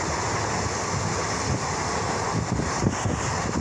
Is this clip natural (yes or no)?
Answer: yes